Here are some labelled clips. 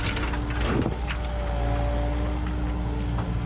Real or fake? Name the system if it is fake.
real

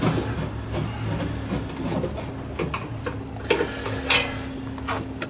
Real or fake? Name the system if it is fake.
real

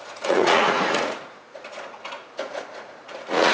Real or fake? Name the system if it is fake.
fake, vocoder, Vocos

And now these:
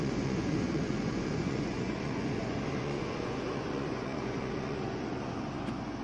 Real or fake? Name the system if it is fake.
fake, vocoder, Vocos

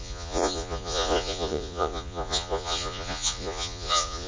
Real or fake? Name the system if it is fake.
fake, vocoder, Vocos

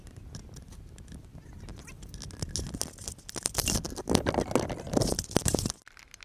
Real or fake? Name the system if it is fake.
real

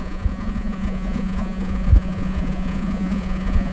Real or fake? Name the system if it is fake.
fake, vocoder, Vocos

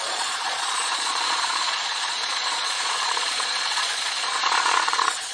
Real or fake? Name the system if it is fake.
fake, vocoder, Vocos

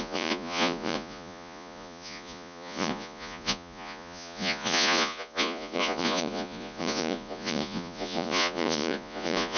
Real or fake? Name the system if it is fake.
fake, vocoder, Vocos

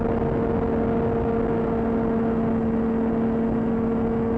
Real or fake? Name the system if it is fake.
real